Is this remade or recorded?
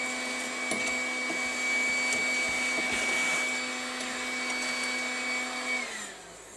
recorded